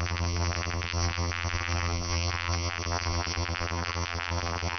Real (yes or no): no